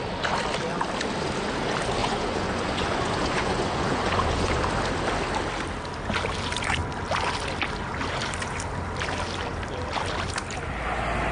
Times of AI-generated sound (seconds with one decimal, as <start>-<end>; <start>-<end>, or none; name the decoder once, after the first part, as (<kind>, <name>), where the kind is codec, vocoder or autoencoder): 2.0-4.6 (vocoder, Vocos)